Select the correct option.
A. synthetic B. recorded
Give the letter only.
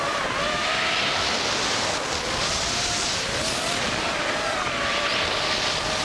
A